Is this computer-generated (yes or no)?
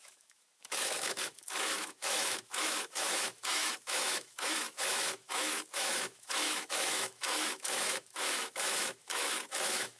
yes